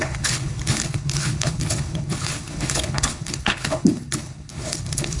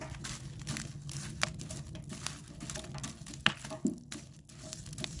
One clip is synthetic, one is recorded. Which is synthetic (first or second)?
first